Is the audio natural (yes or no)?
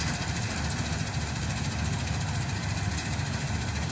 yes